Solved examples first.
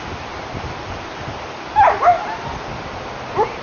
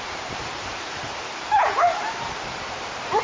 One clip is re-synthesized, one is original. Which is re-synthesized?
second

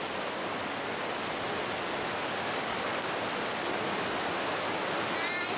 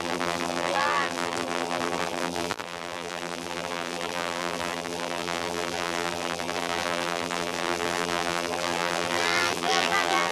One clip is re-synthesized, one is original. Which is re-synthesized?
second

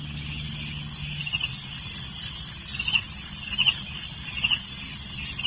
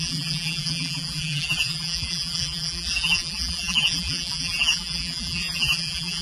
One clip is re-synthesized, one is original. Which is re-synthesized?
second